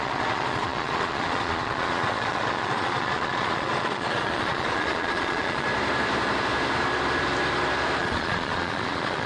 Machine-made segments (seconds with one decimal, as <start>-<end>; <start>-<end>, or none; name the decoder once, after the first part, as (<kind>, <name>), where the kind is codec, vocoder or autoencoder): 0.0-5.7 (vocoder, Vocos); 8.0-9.3